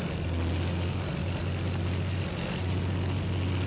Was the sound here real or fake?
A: real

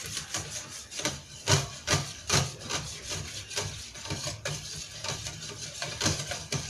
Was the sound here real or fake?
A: fake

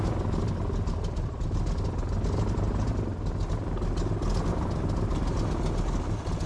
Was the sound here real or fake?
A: real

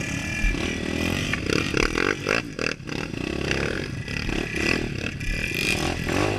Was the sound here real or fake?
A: real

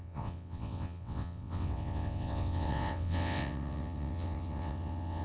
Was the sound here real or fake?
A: fake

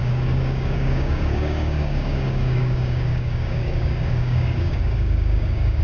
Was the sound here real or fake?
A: fake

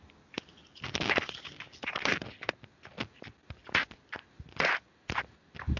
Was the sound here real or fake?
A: real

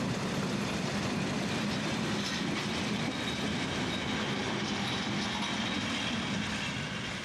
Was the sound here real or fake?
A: real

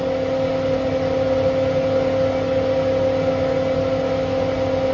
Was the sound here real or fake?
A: real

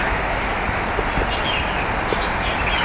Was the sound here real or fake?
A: real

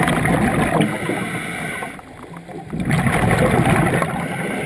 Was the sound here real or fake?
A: real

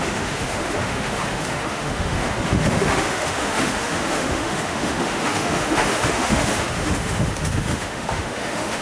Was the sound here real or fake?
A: fake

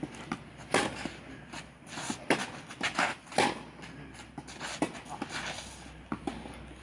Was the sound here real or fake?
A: real